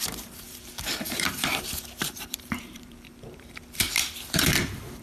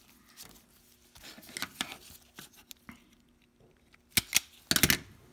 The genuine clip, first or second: second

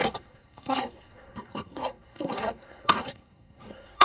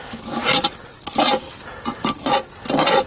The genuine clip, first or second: second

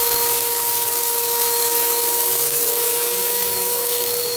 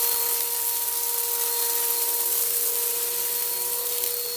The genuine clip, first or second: second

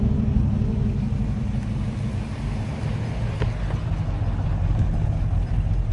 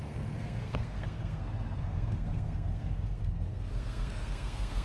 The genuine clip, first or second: first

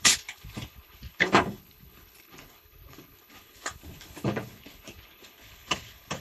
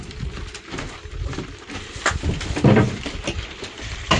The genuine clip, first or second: second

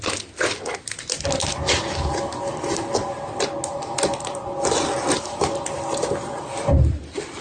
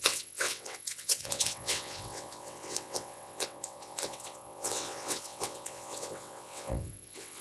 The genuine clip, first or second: first